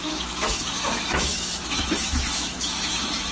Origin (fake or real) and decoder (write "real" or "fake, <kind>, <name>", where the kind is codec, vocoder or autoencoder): fake, autoencoder, DAC-VAE